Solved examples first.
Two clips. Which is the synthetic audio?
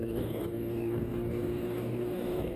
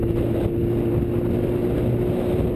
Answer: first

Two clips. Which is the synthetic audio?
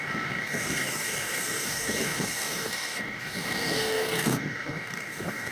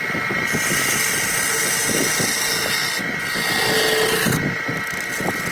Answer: first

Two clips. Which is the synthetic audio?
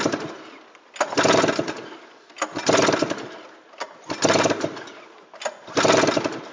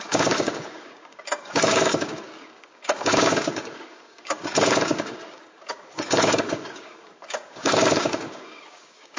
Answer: second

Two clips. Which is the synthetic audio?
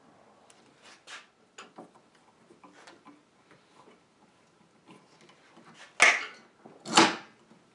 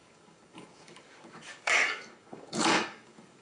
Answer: second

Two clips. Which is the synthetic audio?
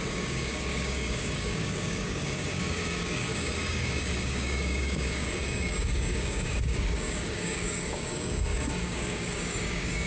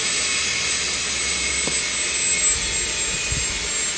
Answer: first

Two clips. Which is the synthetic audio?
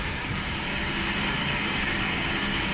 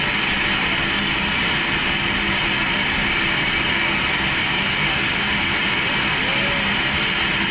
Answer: first